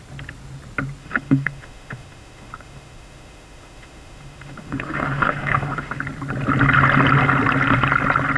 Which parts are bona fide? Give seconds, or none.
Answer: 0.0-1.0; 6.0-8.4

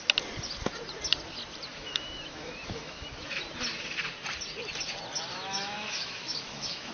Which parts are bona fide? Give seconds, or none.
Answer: 0.0-1.7; 3.4-5.3